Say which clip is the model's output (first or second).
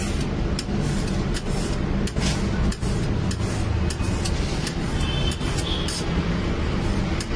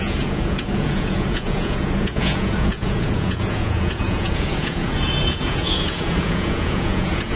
second